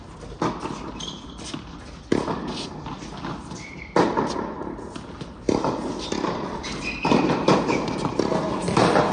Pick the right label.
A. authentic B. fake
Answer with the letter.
A